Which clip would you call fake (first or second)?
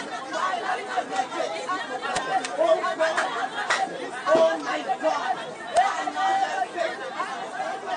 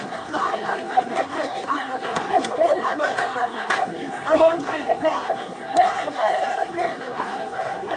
second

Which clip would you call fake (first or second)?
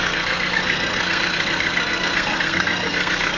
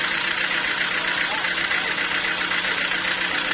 first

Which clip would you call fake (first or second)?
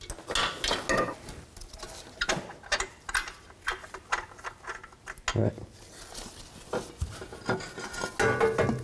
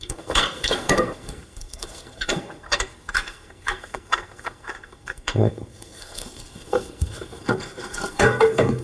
second